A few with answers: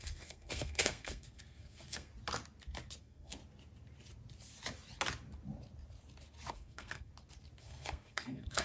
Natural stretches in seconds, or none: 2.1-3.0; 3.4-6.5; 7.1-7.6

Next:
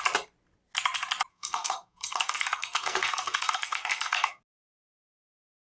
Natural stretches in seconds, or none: 0.0-1.3; 4.4-5.8

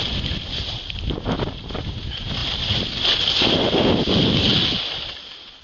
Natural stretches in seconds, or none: 0.0-5.6

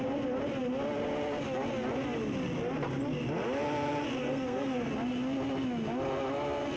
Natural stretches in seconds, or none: 0.0-4.2; 4.9-6.8

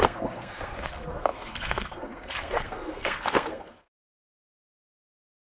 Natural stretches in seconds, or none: none

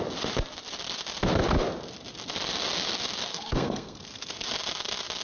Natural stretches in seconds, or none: 0.0-3.3; 4.3-5.2

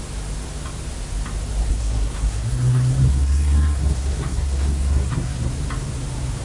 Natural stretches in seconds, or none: 0.0-1.7; 5.5-6.4